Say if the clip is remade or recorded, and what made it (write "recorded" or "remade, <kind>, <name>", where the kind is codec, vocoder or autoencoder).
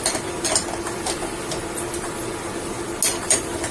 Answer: recorded